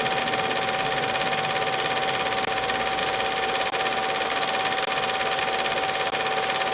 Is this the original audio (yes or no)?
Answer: yes